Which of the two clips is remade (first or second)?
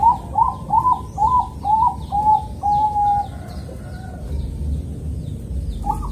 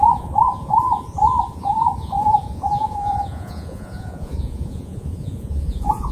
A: second